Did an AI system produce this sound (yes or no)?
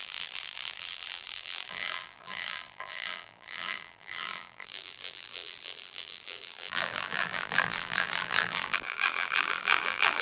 yes